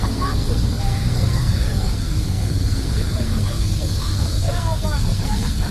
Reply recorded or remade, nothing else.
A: remade